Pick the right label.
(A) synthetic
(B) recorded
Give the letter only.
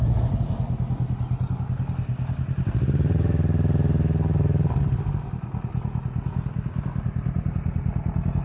B